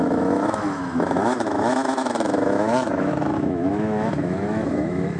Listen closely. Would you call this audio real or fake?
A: fake